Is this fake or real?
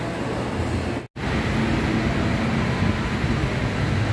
real